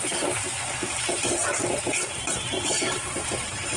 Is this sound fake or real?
fake